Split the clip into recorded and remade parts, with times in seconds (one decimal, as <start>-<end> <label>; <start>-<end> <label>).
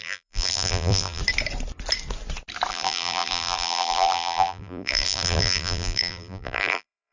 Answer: 0.0-1.2 remade; 1.2-2.7 recorded; 2.7-7.1 remade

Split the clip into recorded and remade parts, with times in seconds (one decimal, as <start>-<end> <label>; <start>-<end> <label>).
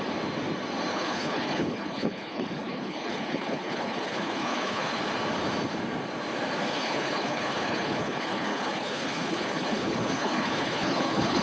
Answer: 0.0-0.9 recorded; 0.9-5.0 remade; 5.0-6.7 recorded; 6.7-11.4 remade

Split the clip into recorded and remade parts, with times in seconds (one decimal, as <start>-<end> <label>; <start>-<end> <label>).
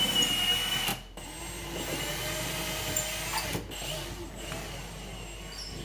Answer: 0.0-5.8 recorded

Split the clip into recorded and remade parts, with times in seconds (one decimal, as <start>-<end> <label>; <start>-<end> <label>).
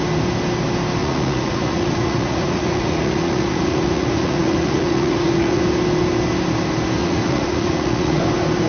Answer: 0.0-1.0 recorded; 1.0-5.6 remade; 5.6-7.0 recorded; 7.0-8.2 remade; 8.2-8.7 recorded